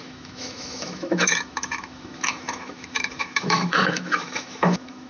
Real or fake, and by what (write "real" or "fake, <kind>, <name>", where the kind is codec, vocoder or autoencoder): fake, autoencoder, DAC-VAE